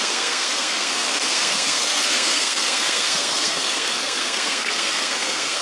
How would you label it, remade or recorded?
remade